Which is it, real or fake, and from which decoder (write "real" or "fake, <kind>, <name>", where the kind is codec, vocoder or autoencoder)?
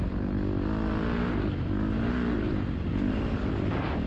real